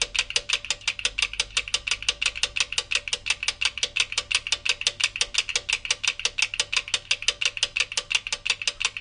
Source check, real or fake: real